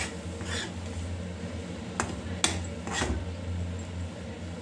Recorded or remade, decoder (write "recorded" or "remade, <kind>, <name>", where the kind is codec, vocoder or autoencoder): recorded